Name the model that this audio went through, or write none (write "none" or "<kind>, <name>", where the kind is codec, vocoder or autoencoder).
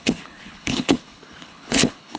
codec, HILCodec